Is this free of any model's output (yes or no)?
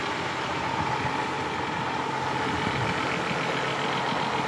yes